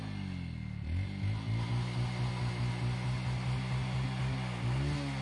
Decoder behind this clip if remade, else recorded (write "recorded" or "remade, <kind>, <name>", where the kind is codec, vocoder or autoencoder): recorded